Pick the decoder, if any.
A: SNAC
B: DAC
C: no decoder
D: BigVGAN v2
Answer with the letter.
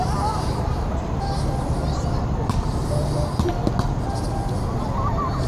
C